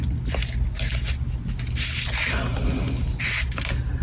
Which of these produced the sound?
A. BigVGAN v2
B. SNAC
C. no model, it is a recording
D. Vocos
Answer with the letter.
C